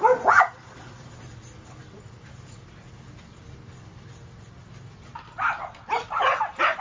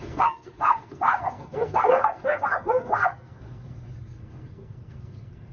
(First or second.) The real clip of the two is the first